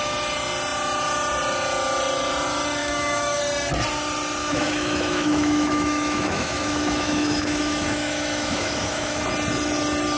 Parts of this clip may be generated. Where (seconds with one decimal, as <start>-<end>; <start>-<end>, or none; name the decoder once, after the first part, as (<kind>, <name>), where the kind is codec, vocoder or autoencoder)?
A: 2.8-3.4 (autoencoder, DAC-VAE); 4.4-9.2